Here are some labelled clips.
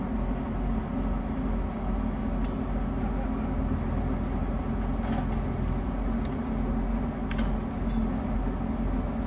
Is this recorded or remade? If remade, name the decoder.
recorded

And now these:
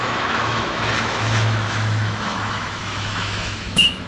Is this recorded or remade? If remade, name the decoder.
remade, autoencoder, DAC-VAE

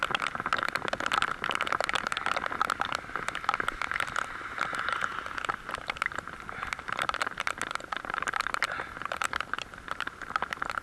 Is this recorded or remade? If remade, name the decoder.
recorded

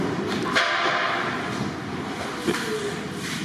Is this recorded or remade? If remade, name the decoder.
recorded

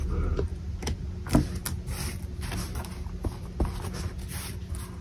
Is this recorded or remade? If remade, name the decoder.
recorded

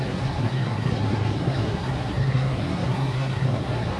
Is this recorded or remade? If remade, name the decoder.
remade, codec, SNAC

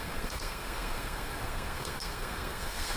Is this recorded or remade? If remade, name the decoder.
remade, codec, SNAC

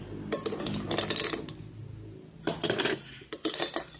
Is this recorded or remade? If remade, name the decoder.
recorded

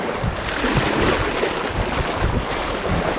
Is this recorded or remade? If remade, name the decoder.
recorded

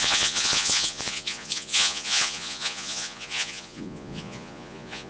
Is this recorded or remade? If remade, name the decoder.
remade, vocoder, Vocos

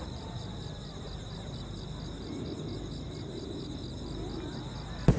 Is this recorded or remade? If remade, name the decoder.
recorded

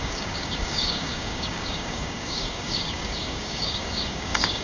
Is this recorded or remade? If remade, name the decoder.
remade, codec, DAC